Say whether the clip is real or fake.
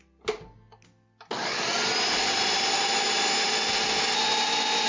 real